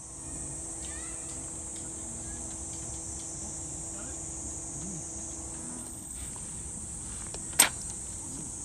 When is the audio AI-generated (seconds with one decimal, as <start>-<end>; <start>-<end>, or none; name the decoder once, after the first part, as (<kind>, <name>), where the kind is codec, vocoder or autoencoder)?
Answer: 5.8-6.3 (codec, HILCodec)